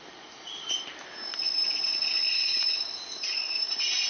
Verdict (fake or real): real